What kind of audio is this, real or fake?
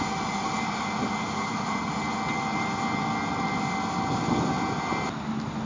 real